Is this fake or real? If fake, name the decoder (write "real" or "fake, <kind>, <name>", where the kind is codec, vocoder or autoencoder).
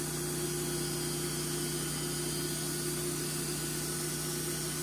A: real